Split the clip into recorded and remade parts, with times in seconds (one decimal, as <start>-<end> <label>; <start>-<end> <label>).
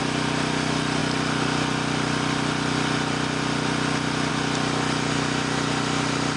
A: 0.0-6.4 recorded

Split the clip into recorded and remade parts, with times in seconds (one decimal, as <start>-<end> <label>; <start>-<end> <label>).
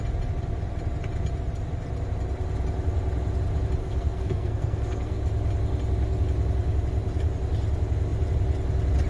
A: 0.0-3.8 recorded; 3.8-5.2 remade; 5.2-9.1 recorded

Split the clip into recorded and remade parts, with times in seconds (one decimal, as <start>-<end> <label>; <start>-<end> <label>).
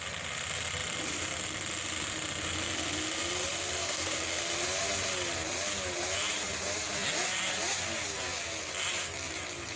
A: 0.0-3.8 recorded; 3.8-4.4 remade; 4.4-9.8 recorded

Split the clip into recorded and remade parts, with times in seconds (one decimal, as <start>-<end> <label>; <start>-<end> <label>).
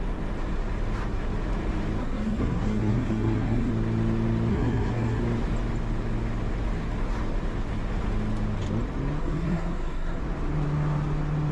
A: 0.0-2.0 recorded; 2.0-3.7 remade; 3.7-4.5 recorded; 4.5-5.2 remade; 5.2-9.2 recorded; 9.2-10.2 remade; 10.2-11.5 recorded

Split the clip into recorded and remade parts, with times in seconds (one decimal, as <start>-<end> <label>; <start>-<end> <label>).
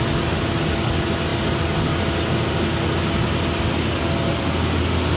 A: 0.0-5.2 recorded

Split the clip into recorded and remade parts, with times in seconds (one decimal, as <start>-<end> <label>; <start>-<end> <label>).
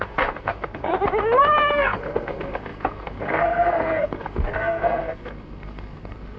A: 0.0-0.9 remade; 0.9-1.7 recorded; 1.7-6.4 remade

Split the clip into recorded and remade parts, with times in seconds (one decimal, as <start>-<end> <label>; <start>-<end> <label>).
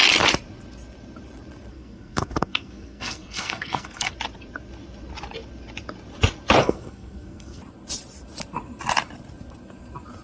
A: 0.0-1.7 recorded; 1.7-4.1 remade; 4.1-6.6 recorded; 6.6-7.6 remade; 7.6-10.2 recorded